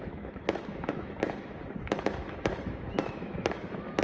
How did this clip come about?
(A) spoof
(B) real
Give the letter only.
A